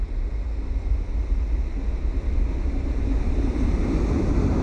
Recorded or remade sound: recorded